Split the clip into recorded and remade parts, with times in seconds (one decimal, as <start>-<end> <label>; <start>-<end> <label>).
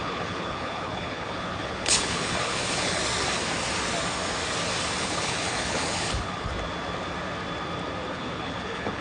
0.0-3.0 remade; 3.0-5.0 recorded; 5.0-6.5 remade; 6.5-8.1 recorded; 8.1-9.0 remade